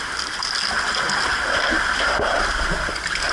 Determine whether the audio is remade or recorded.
recorded